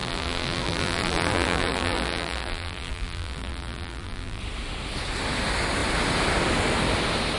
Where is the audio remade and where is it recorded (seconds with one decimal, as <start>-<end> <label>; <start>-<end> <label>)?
0.0-4.4 remade; 4.4-7.4 recorded